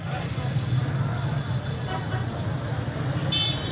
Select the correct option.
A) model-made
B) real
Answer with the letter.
B